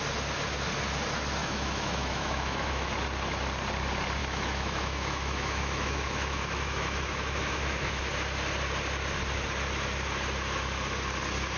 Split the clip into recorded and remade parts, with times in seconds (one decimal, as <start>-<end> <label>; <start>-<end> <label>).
0.0-1.4 recorded; 1.4-2.9 remade; 2.9-4.2 recorded; 4.2-8.0 remade; 8.0-11.6 recorded